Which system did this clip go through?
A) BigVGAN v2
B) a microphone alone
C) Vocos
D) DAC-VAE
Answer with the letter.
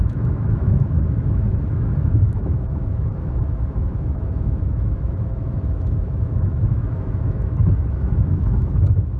D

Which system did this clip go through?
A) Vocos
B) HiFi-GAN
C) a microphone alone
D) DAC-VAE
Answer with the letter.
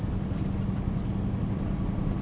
C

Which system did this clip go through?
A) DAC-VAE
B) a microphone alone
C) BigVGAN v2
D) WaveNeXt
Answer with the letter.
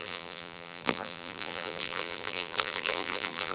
C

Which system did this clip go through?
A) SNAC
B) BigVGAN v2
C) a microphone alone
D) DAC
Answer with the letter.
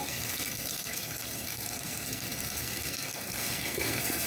A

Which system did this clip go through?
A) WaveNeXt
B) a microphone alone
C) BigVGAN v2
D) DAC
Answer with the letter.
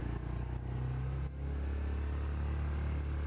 B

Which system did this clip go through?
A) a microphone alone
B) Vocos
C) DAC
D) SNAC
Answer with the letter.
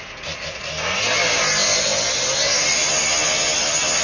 A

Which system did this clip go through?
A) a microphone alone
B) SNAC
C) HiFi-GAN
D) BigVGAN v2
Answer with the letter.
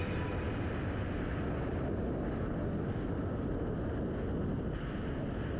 A